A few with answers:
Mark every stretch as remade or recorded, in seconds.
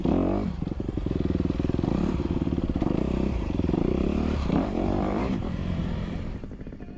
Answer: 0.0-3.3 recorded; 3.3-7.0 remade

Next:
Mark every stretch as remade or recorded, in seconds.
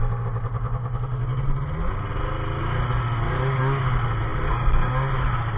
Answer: 0.0-5.6 recorded